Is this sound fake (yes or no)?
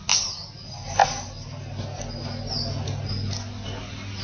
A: no